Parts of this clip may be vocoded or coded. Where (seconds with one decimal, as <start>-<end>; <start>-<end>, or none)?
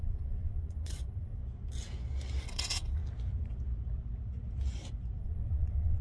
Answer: 0.0-1.4; 2.4-3.0; 5.2-6.0